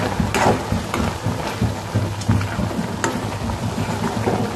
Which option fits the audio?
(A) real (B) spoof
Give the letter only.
A